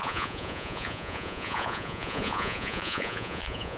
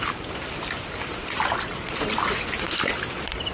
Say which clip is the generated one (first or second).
first